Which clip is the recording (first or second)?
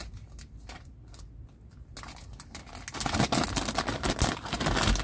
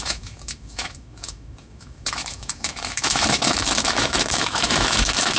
first